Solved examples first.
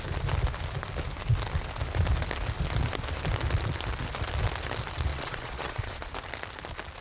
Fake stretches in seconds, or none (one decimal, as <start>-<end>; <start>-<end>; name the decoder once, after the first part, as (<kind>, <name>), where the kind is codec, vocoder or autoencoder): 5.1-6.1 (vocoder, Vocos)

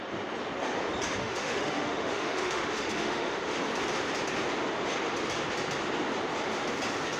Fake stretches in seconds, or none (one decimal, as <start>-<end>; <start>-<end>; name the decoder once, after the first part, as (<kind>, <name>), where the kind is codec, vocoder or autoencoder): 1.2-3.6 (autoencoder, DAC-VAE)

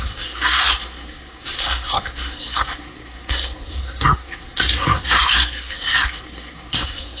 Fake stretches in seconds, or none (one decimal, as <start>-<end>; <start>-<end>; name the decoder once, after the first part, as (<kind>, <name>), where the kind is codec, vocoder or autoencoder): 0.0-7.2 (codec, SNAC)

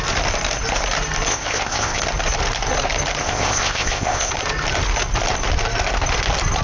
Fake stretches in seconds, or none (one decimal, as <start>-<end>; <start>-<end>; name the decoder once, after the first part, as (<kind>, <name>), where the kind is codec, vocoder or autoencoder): 1.3-2.0 (codec, ZipCodec); 3.2-4.3

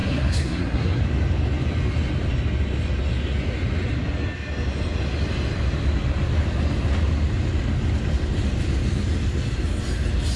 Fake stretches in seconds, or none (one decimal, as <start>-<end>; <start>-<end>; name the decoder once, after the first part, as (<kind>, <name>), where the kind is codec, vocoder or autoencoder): 0.0-1.0 (codec, SNAC)

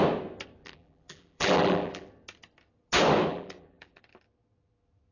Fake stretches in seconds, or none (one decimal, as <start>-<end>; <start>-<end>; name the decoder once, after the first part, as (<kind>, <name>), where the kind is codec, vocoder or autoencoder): 0.6-2.1 (vocoder, BigVGAN v2); 3.3-4.0

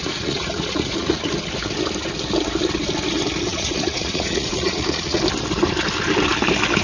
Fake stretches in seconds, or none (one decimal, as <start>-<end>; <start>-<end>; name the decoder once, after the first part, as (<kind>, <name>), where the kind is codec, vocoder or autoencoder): 0.0-1.3 (vocoder, Vocos); 3.5-5.2